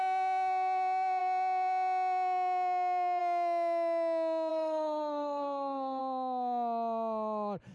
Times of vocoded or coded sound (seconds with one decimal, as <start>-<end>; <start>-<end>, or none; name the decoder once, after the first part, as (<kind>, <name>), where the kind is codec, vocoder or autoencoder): 4.5-6.0 (codec, SNAC)

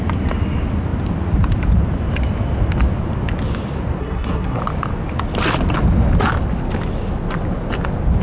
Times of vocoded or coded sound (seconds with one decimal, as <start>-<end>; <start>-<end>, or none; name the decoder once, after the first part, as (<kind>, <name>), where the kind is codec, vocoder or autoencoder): 4.0-4.6 (codec, SNAC)

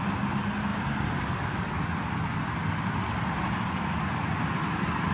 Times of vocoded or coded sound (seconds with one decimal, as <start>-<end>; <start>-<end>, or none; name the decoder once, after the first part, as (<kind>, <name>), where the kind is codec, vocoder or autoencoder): none